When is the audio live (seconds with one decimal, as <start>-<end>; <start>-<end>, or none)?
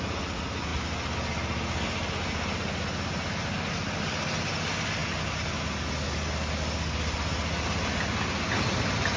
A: 0.0-9.2